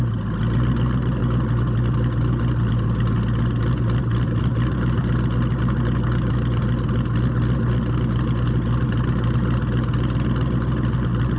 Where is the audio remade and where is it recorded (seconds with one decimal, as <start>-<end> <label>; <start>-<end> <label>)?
0.0-11.4 recorded